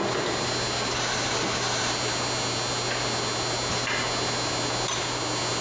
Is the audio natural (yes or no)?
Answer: yes